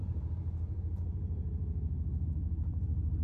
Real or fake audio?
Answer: fake